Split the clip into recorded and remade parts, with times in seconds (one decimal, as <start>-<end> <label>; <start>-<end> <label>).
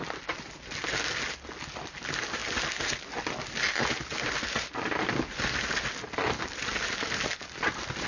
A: 0.0-8.1 recorded